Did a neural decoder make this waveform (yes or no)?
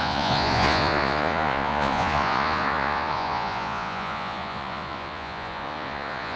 yes